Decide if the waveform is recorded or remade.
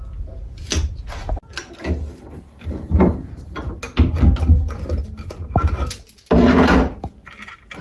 recorded